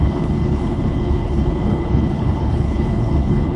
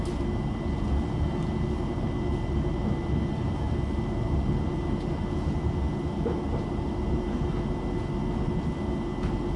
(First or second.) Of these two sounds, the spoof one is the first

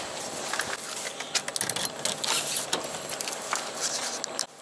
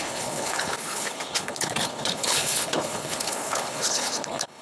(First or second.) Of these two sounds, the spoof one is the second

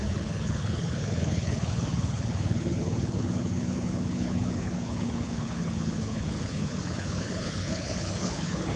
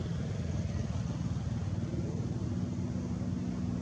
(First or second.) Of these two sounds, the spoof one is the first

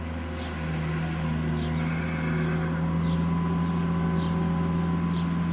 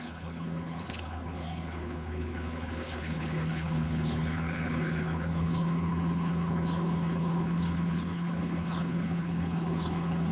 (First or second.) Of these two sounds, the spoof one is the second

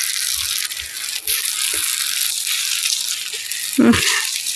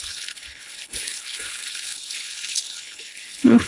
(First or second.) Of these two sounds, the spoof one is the second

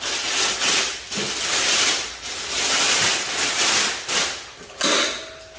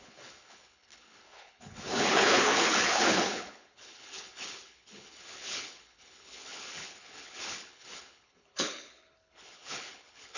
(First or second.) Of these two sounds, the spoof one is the second